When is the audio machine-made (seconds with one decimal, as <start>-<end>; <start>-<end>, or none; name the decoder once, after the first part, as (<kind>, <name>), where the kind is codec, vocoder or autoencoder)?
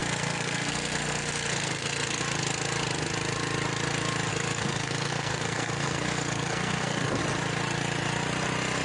0.0-2.2 (codec, SNAC); 4.3-7.2